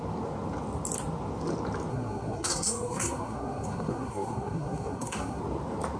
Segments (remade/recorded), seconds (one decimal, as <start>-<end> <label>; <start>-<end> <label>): 0.0-1.9 recorded; 1.9-5.4 remade; 5.4-6.0 recorded